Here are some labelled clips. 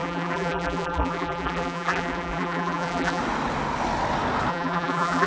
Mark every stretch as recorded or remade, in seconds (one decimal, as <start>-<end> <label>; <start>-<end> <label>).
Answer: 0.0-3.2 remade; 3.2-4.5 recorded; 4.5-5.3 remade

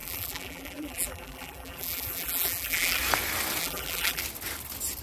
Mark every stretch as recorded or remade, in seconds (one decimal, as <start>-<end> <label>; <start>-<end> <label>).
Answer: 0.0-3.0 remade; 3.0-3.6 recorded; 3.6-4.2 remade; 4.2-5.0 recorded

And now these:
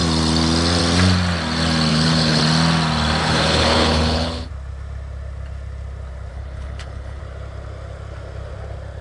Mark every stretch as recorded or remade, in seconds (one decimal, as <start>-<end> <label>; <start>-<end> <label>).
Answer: 0.0-1.9 recorded; 1.9-2.4 remade; 2.4-3.2 recorded; 3.2-4.5 remade; 4.5-6.3 recorded; 6.3-7.2 remade; 7.2-9.0 recorded

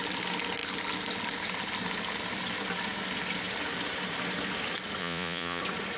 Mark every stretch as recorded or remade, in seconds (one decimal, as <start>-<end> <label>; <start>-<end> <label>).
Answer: 0.0-5.0 recorded; 5.0-5.6 remade; 5.6-6.0 recorded